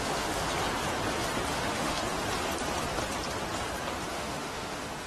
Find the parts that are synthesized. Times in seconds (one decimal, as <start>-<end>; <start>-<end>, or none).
0.0-0.4; 1.5-2.0; 4.1-5.1